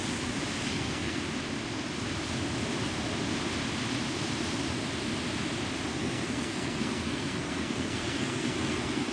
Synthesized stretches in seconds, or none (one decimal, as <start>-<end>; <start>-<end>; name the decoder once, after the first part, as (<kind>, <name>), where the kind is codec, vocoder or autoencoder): 0.7-1.2 (codec, SNAC); 5.9-9.1